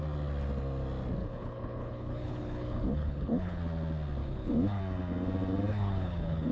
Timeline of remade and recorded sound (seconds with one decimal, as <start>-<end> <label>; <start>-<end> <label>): 0.0-1.2 recorded; 1.2-3.6 remade; 3.6-4.2 recorded; 4.2-4.8 remade; 4.8-5.7 recorded; 5.7-6.5 remade